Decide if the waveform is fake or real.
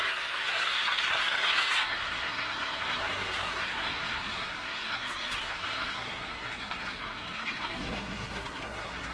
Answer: fake